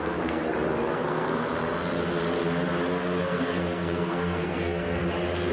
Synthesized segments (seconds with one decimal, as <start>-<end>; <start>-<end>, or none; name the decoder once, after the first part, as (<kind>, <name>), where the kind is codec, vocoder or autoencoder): 0.0-0.4 (codec, SNAC); 0.9-1.5; 3.2-5.0